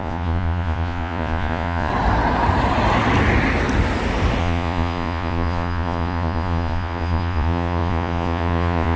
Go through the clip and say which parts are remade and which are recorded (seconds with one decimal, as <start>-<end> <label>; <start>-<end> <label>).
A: 0.0-1.9 remade; 1.9-4.4 recorded; 4.4-9.0 remade